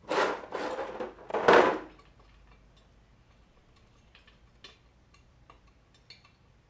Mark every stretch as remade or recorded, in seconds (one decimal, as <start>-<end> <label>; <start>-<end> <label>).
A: 0.0-6.7 recorded